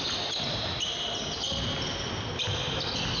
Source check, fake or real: real